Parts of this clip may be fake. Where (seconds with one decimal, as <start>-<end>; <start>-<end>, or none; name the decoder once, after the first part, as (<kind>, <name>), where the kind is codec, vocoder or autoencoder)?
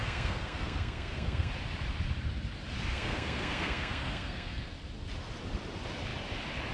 0.0-1.5 (codec, SNAC); 2.9-4.7